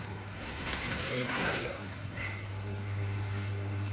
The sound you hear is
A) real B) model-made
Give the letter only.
B